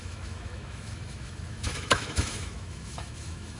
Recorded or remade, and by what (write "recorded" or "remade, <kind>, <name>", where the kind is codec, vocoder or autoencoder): remade, autoencoder, DAC-VAE